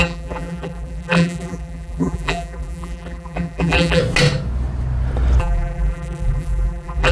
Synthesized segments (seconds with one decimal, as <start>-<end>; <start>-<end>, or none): 0.0-4.0; 5.4-7.1

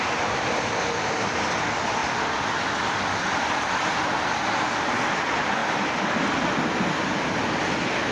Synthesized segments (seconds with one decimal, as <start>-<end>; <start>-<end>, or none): none